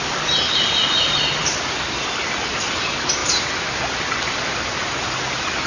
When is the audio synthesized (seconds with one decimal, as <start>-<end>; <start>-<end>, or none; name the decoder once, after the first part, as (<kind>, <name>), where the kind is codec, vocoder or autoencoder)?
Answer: none